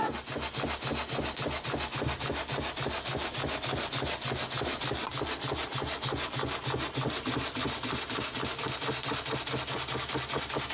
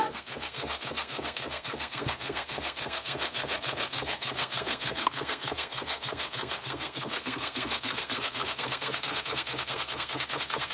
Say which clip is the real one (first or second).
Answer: first